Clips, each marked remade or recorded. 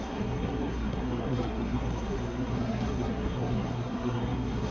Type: remade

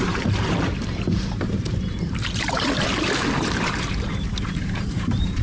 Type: remade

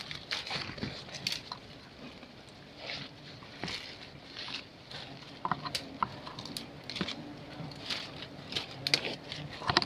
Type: recorded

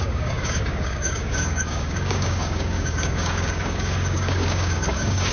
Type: remade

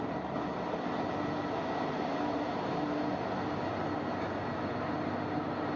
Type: recorded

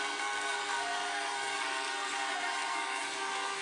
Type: remade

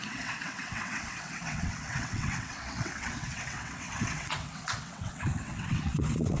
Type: remade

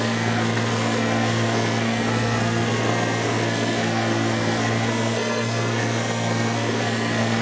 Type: remade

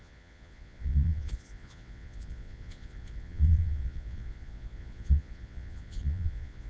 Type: remade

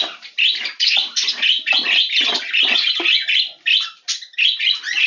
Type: recorded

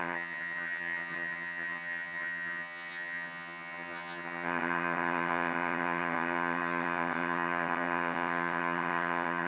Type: remade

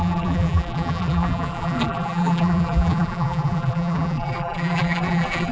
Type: remade